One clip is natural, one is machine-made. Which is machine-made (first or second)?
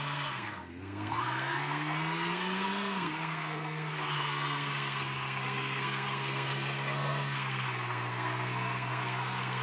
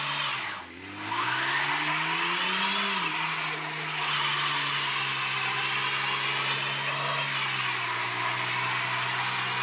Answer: first